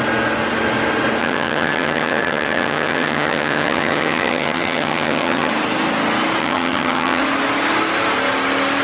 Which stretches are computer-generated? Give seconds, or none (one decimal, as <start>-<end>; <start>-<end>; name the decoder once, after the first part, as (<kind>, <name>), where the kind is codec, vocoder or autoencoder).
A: 1.2-5.5 (vocoder, HiFi-GAN); 6.4-7.2